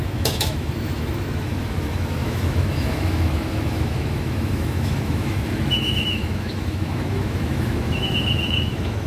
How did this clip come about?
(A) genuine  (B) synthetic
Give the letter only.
B